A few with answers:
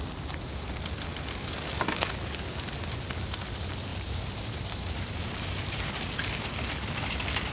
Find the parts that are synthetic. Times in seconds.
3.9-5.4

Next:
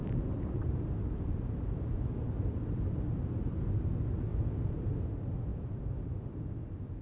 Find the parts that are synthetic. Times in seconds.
0.0-0.6; 4.3-4.9; 5.5-7.0

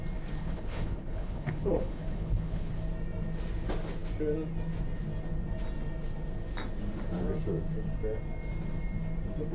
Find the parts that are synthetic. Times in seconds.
0.4-2.7